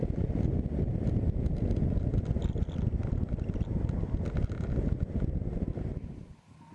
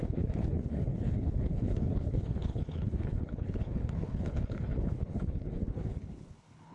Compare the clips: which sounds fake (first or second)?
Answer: second